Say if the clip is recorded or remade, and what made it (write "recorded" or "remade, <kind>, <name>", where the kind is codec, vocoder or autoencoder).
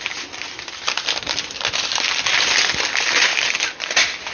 recorded